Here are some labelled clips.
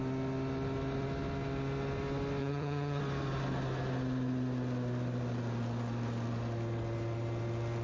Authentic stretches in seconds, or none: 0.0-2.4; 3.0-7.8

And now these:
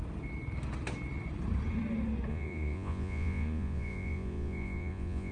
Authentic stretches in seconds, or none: 0.0-2.3

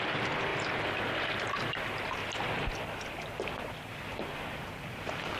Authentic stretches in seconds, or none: 2.2-3.7

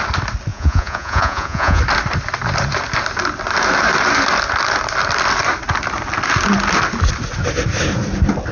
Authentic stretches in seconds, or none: 0.0-0.5; 1.8-8.5

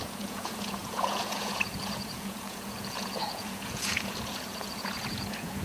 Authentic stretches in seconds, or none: none

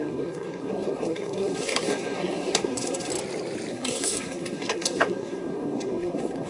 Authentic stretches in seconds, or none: 3.1-3.7

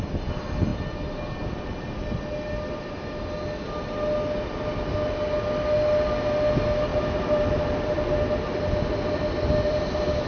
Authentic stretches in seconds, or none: 0.0-10.3